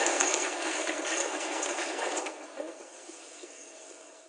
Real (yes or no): no